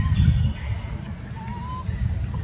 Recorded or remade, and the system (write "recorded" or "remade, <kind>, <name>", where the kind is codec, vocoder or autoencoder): recorded